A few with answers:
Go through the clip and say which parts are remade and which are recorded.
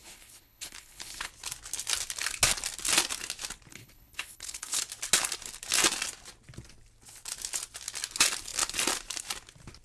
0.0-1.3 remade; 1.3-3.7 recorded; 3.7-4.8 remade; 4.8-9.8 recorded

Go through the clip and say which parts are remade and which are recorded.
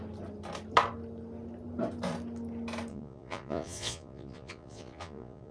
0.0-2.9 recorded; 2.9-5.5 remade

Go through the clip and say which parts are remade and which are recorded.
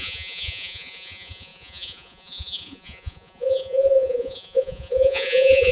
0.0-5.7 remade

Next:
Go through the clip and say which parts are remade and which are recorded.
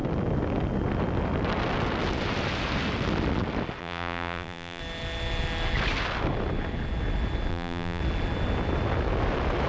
0.0-3.8 recorded; 3.8-4.8 remade; 4.8-7.5 recorded; 7.5-8.0 remade; 8.0-9.7 recorded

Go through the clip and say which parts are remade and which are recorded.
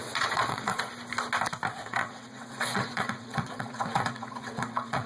0.0-0.9 remade; 0.9-1.8 recorded; 1.8-5.1 remade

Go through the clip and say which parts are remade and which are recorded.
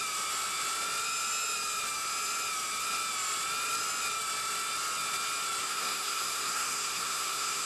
0.0-5.6 recorded; 5.6-7.7 remade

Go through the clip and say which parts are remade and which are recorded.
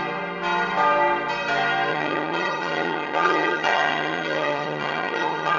0.0-1.9 recorded; 1.9-5.6 remade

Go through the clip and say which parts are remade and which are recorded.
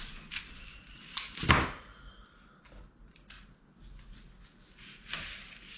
0.0-5.8 recorded